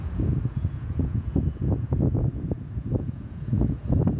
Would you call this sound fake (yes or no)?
yes